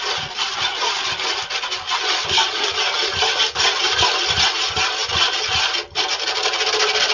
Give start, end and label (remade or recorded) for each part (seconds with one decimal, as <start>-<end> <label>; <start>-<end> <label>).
0.0-7.1 recorded